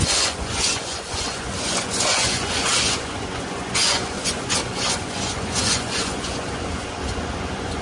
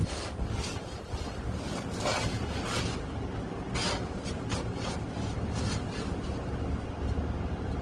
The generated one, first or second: first